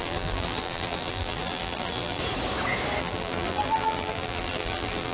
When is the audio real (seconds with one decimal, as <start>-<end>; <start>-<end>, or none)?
2.2-3.0